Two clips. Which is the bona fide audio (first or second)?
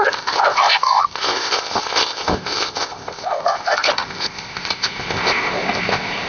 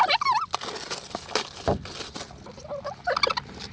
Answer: second